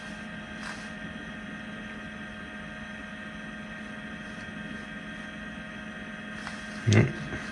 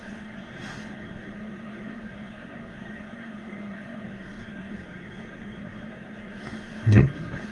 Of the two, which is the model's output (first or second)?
second